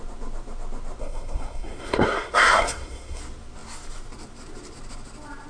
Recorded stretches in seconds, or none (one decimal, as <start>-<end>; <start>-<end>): 0.0-1.0; 3.2-5.5